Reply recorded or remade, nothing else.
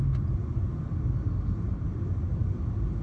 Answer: recorded